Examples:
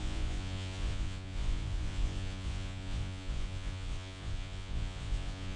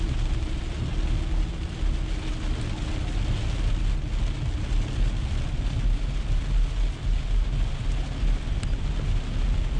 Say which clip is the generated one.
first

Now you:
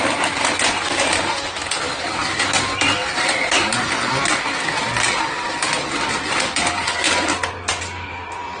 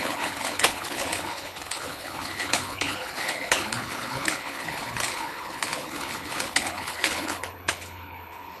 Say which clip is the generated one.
second